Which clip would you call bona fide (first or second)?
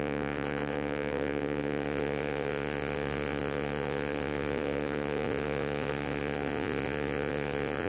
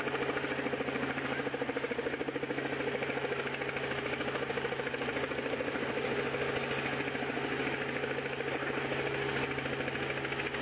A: second